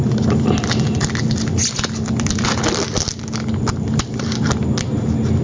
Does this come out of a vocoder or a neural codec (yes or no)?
no